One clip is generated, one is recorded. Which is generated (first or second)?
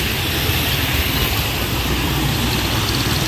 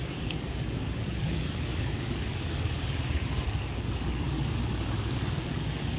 second